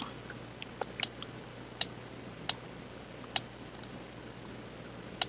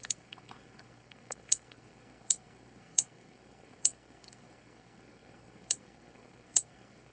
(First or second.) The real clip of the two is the first